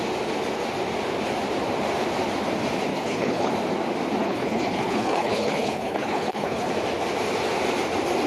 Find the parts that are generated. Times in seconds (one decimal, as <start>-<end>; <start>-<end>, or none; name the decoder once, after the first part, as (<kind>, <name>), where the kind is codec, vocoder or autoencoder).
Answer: 2.9-3.5 (codec, HILCodec); 4.2-6.7